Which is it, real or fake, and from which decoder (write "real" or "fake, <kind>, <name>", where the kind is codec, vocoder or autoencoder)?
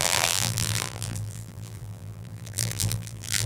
fake, vocoder, BigVGAN v2